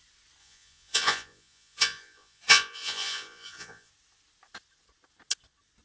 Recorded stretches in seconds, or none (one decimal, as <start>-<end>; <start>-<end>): 0.0-0.4; 3.9-5.8